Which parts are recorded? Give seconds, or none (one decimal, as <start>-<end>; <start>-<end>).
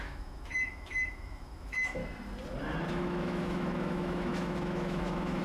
2.0-2.9